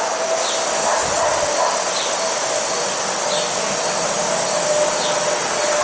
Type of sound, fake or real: real